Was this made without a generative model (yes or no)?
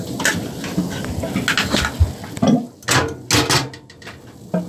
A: yes